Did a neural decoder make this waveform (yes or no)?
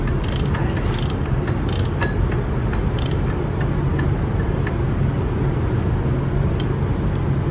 no